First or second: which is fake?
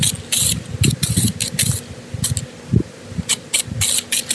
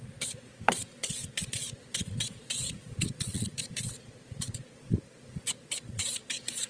second